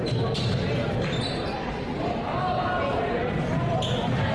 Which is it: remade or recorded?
remade